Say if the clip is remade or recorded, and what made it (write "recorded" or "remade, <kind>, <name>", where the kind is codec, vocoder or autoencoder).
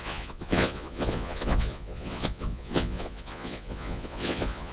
remade, vocoder, Vocos